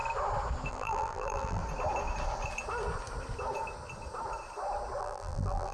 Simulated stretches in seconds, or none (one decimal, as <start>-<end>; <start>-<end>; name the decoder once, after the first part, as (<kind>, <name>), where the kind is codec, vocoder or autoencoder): 0.7-1.6 (vocoder, BigVGAN v2); 5.0-5.7